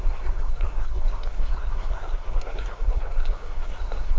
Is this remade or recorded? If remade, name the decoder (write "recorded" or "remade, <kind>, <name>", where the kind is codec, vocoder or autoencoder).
remade, codec, SNAC